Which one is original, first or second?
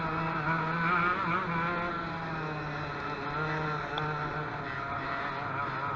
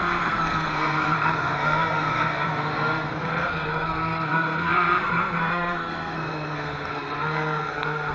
first